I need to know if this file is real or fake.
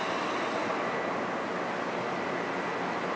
real